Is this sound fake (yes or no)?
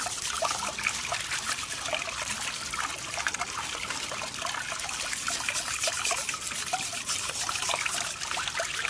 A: no